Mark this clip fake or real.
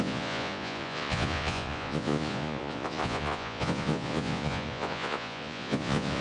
fake